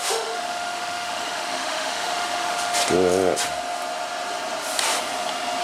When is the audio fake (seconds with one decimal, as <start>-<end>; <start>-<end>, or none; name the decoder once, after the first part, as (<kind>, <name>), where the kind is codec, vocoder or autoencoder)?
0.0-2.8 (autoencoder, DAC-VAE)